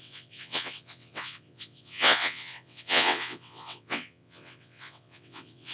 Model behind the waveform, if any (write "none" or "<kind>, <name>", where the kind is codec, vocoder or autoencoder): vocoder, WaveNeXt